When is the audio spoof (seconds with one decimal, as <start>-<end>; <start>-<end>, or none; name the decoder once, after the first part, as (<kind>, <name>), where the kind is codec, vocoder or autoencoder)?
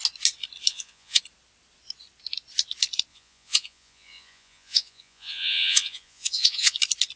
0.7-1.2 (vocoder, Vocos); 3.1-6.8